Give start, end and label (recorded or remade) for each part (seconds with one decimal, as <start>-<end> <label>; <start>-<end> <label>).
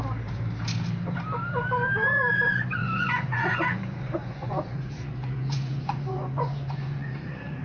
0.0-2.8 recorded; 2.8-7.6 remade